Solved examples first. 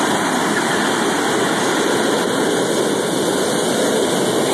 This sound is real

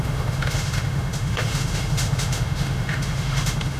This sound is fake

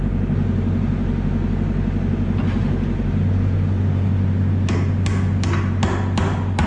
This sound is real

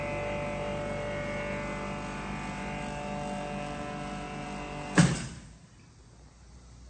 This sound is real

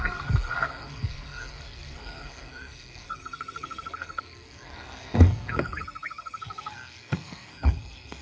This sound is fake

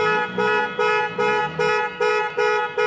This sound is real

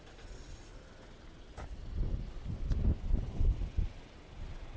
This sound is real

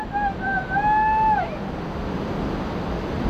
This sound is real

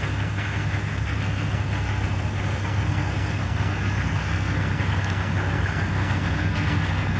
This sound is fake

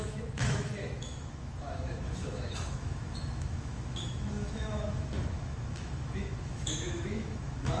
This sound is fake